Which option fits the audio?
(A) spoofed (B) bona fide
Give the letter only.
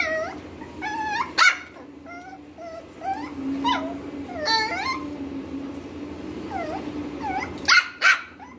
B